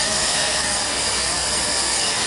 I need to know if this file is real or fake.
fake